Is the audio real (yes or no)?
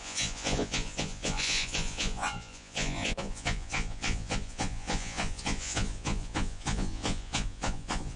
no